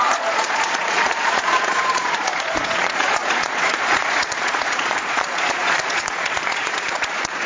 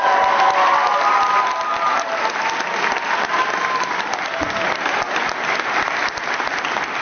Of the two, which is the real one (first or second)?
second